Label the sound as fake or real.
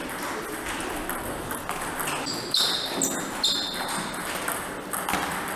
real